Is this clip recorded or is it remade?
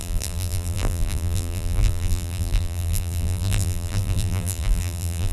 remade